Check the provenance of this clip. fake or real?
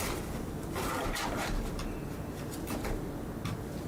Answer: real